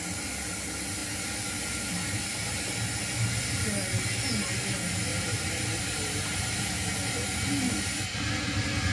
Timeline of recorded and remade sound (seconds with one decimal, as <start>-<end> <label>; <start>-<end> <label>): 0.0-5.1 recorded; 5.1-6.6 remade; 6.6-8.9 recorded